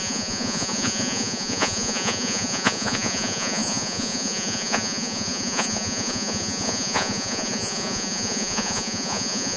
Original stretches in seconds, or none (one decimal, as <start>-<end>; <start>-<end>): none